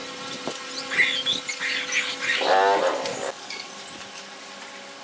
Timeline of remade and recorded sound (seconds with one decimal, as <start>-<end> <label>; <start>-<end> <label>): 0.0-3.1 recorded; 3.1-3.7 remade; 3.7-5.0 recorded